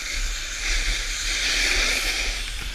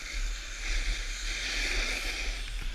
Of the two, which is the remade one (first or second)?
first